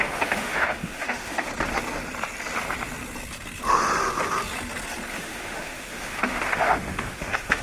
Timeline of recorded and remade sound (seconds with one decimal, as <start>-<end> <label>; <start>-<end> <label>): 0.0-1.5 remade; 1.5-5.1 recorded; 5.1-7.6 remade